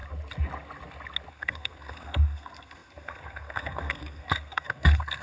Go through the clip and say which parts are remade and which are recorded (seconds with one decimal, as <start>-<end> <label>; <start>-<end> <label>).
0.0-1.3 recorded; 1.3-5.2 remade